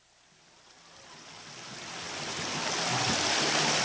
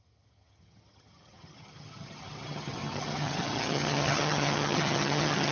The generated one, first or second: second